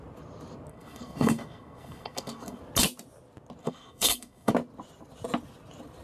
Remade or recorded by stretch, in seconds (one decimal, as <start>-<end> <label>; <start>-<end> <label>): 0.0-0.7 recorded; 0.7-2.6 remade; 2.6-3.6 recorded; 3.6-4.5 remade; 4.5-6.0 recorded